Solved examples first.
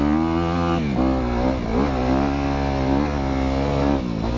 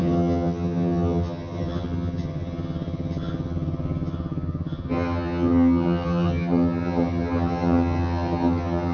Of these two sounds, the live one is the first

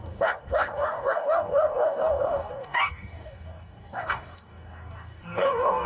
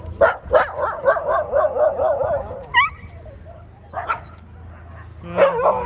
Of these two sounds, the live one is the second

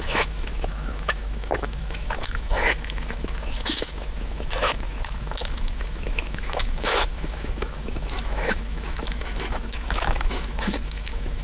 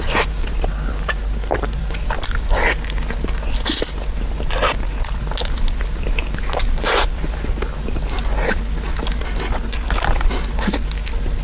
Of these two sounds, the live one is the second